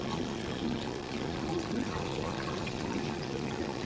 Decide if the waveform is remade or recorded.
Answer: remade